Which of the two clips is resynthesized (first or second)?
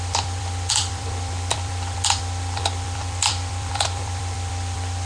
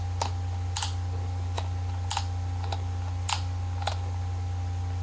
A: first